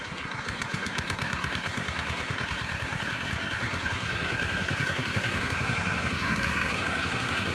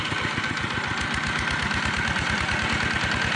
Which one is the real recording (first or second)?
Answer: second